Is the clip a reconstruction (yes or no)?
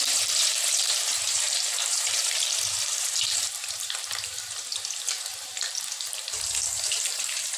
yes